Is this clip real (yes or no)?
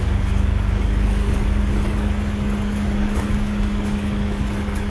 no